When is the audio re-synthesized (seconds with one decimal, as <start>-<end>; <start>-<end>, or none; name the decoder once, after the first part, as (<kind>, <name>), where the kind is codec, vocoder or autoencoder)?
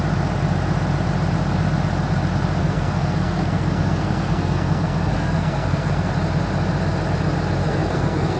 2.6-6.1 (codec, SNAC); 7.6-8.4